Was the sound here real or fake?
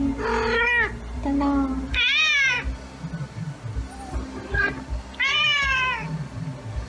real